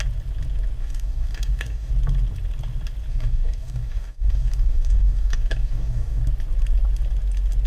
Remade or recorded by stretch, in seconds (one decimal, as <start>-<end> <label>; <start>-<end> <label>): 0.0-0.8 recorded; 0.8-1.9 remade; 1.9-3.1 recorded; 3.1-6.2 remade; 6.2-7.7 recorded